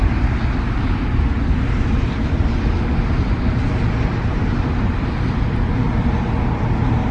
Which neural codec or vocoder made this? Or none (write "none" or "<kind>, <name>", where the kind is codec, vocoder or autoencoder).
none